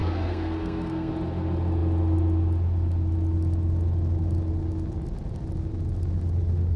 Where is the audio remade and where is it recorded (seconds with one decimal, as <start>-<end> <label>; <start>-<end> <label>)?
0.0-1.1 remade; 1.1-6.8 recorded

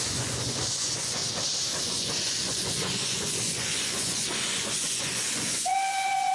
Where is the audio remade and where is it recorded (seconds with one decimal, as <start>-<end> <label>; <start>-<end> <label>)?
0.0-1.2 remade; 1.2-1.8 recorded; 1.8-6.3 remade

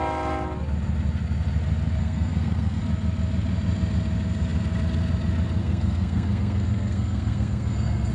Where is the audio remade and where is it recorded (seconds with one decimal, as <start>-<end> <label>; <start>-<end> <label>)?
0.0-2.0 recorded; 2.0-2.8 remade; 2.8-5.6 recorded; 5.6-8.1 remade

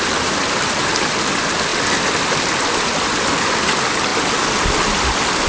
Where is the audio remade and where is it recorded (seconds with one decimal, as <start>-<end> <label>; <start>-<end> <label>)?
0.0-5.5 recorded

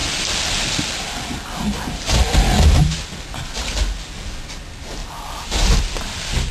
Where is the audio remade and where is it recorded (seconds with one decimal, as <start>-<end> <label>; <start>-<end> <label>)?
0.0-6.5 recorded

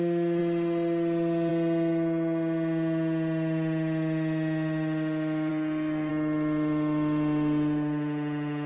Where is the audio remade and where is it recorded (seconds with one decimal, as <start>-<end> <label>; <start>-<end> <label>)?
0.0-5.5 recorded; 5.5-6.1 remade; 6.1-8.7 recorded

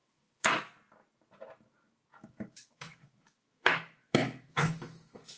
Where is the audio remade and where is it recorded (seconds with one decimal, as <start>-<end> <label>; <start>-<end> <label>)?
0.0-0.5 remade; 0.5-2.1 recorded; 2.1-5.4 remade

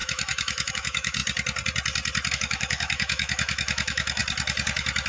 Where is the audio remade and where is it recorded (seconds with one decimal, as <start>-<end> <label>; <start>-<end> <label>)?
0.0-1.2 remade; 1.2-2.3 recorded; 2.3-4.2 remade; 4.2-5.1 recorded